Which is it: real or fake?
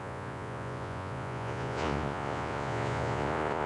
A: fake